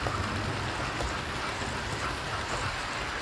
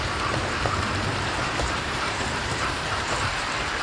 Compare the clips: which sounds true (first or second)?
first